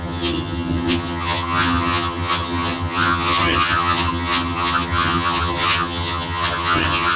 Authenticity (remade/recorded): remade